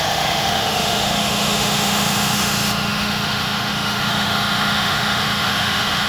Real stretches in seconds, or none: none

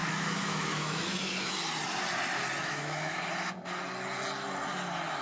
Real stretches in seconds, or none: 1.5-2.6; 3.2-5.2

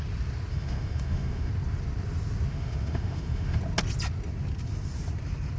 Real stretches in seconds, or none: 0.0-0.5; 1.5-2.5; 3.6-5.6

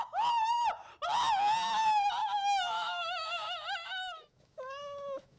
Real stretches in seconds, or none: 0.0-2.2

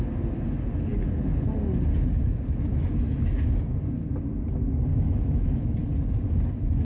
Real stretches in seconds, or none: 0.0-4.9; 5.7-6.8

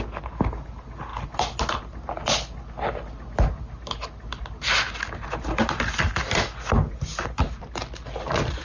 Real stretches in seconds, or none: 0.0-8.6

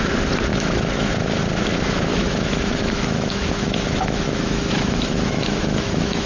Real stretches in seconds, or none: 0.0-0.5; 1.1-2.1

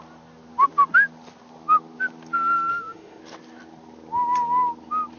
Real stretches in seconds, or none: 0.0-2.7; 3.2-5.2